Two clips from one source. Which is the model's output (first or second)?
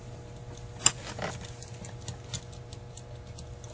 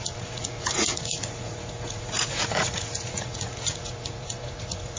second